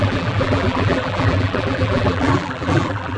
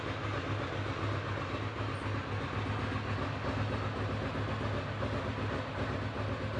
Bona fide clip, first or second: second